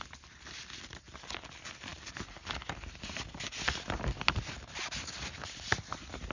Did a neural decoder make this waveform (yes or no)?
no